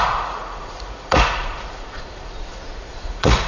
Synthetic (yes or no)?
yes